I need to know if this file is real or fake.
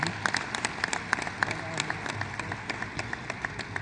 real